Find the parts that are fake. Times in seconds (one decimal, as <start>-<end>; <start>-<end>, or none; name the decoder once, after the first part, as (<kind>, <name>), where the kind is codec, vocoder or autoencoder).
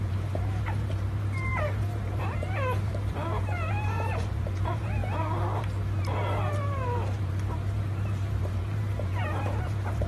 0.0-10.1 (vocoder, BigVGAN v2)